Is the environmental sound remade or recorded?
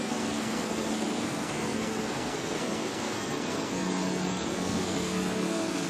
remade